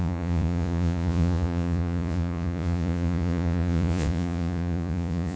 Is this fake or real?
fake